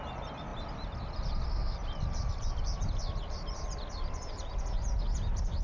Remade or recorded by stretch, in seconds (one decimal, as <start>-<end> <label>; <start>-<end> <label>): 0.0-5.6 recorded